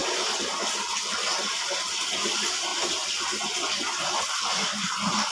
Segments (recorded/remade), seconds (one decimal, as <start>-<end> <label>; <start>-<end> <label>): 0.0-5.3 recorded